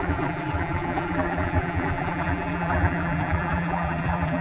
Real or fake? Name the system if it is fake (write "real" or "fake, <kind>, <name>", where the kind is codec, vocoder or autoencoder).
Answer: fake, vocoder, BigVGAN v2